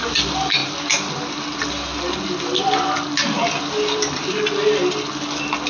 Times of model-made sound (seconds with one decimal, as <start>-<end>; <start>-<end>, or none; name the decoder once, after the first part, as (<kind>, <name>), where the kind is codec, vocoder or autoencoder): none